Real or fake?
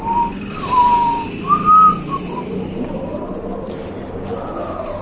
real